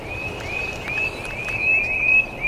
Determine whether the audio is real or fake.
real